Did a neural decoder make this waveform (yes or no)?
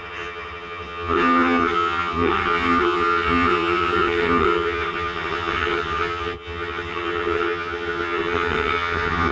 yes